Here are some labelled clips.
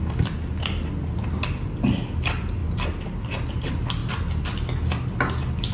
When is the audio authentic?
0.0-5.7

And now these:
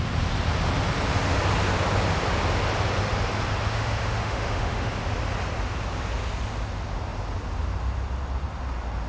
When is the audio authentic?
0.0-3.7; 4.9-9.1

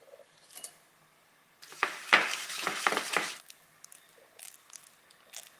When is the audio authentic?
0.0-1.7; 2.9-5.6

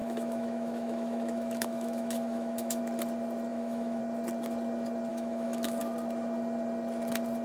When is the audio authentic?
2.8-3.5; 4.0-5.1; 5.8-7.4

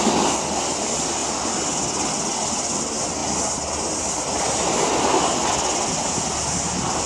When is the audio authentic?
0.0-7.1

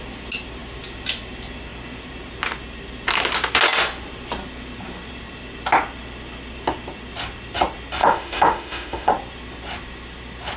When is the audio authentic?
0.0-8.0; 9.1-10.6

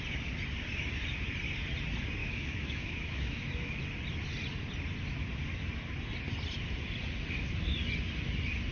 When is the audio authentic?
0.0-2.2; 3.8-8.7

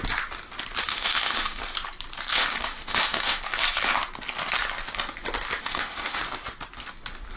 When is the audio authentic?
0.0-0.8; 1.6-2.3; 3.4-5.6; 6.2-7.4